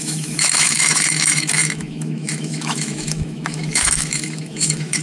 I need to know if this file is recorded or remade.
remade